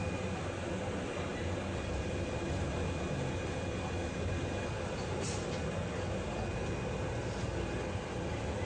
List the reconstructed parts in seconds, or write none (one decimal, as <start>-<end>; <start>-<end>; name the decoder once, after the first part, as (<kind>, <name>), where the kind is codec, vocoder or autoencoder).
none